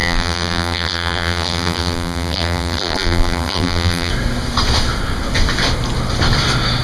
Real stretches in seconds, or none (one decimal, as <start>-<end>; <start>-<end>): 4.1-6.8

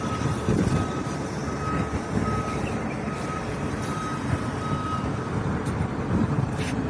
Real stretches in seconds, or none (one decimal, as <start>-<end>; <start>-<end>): 1.4-2.9; 4.1-5.4

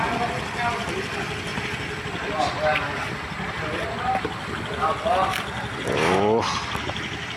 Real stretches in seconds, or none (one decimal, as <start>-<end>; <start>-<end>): 0.0-7.4

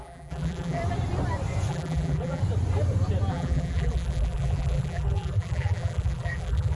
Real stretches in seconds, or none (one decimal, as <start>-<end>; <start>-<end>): 0.8-1.7; 2.4-3.3

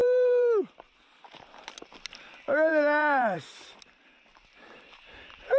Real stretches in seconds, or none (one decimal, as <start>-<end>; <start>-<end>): 1.0-2.7

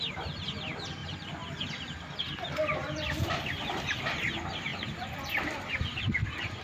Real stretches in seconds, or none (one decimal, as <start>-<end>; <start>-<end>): 0.0-1.0; 1.7-2.8; 4.1-6.6

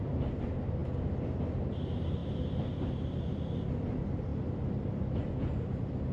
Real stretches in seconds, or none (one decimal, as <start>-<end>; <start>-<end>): 0.8-1.7; 2.2-3.7; 4.3-4.9

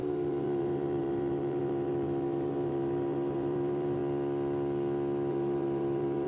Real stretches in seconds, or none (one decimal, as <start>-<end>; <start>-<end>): 4.0-5.3